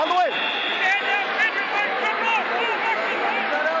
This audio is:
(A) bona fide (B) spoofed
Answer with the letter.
A